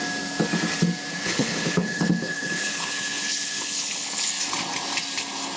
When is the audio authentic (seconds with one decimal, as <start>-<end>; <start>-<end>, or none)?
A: 0.0-1.1; 4.3-5.6